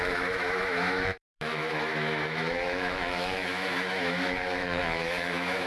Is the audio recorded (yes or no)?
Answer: no